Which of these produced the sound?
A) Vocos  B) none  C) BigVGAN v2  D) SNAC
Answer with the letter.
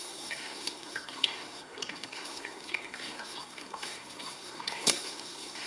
D